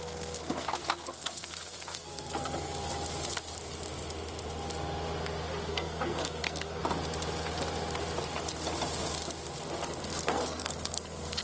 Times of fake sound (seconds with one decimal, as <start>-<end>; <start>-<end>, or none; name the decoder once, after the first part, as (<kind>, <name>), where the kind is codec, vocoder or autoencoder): 0.0-2.7 (codec, SNAC); 5.7-6.8; 10.0-11.4